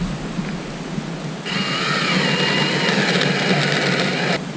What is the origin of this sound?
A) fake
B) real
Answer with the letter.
B